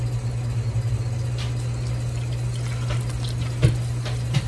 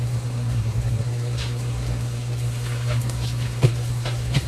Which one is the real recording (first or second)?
first